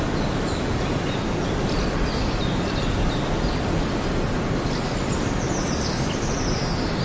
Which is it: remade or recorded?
recorded